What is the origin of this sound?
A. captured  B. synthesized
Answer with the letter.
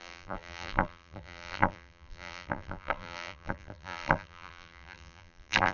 B